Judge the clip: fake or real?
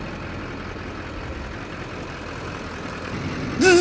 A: real